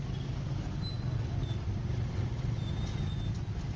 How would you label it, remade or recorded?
recorded